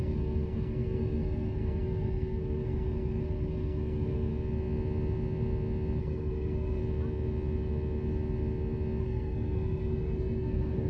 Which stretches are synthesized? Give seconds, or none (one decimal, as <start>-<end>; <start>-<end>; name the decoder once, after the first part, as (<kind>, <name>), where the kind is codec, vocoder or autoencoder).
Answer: 0.0-4.3 (codec, SNAC); 6.0-6.8; 9.0-10.9